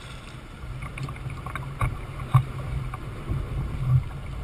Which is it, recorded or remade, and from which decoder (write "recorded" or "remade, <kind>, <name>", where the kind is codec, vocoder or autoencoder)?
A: remade, vocoder, BigVGAN v2